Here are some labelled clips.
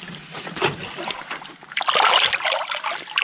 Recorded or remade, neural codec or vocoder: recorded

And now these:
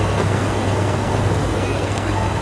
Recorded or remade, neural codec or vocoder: remade, codec, SNAC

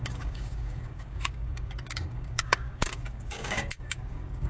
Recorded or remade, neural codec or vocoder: remade, codec, DAC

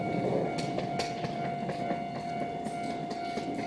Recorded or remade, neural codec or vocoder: recorded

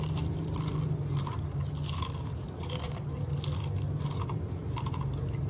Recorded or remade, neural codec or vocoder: recorded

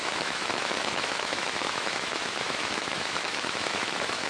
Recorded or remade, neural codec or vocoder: remade, autoencoder, DAC-VAE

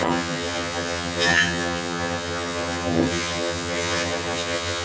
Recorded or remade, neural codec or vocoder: remade, vocoder, HiFi-GAN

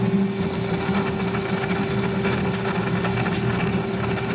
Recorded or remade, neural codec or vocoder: recorded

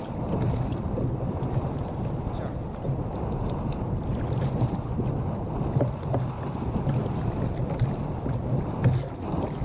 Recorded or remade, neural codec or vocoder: recorded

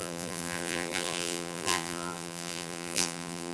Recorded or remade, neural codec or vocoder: remade, vocoder, BigVGAN v2